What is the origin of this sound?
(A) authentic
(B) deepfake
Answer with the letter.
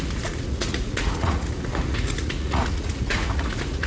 B